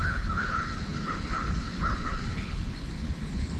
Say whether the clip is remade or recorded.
remade